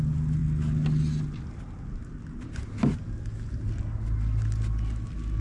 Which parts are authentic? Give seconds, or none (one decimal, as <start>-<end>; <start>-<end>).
0.0-5.4